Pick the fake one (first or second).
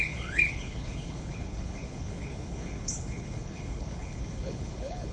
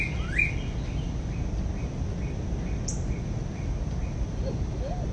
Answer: first